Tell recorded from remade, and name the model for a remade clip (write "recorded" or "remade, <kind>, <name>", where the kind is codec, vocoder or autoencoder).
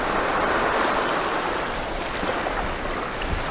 recorded